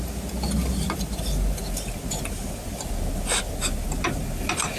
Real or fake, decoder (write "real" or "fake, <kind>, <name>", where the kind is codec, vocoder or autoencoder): real